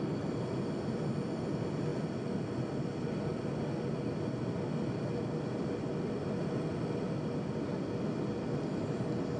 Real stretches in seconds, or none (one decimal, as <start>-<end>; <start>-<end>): 0.0-9.4

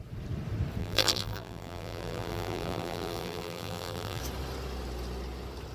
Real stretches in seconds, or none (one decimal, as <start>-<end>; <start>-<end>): 0.0-0.8; 4.2-5.7